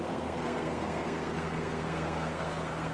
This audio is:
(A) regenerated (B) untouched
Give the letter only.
A